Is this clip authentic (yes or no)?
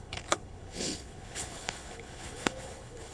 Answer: no